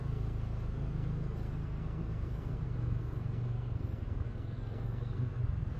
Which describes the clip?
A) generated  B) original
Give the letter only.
A